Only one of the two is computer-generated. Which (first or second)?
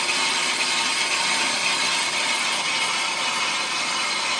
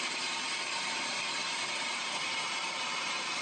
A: second